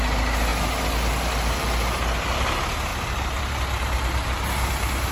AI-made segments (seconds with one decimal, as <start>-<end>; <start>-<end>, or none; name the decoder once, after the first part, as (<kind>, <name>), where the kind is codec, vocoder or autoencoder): 2.9-4.5 (vocoder, BigVGAN v2)